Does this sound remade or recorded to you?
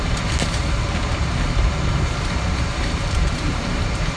remade